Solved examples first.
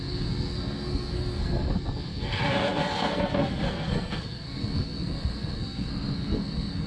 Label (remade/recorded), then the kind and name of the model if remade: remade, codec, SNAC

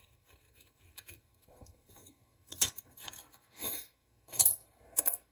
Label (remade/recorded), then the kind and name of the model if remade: remade, codec, SNAC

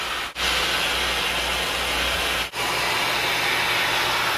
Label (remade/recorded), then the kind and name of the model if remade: recorded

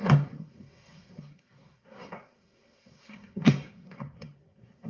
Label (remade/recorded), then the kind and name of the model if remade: remade, codec, SNAC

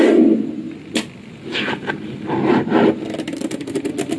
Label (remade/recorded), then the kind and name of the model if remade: recorded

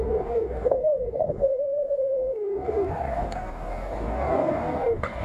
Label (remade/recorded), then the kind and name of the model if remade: remade, codec, DAC